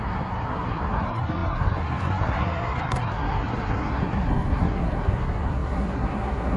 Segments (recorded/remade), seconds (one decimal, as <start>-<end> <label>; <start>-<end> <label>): 0.0-6.6 remade